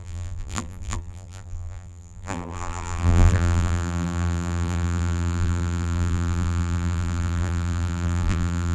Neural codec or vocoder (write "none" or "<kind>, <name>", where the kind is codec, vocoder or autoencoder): vocoder, BigVGAN v2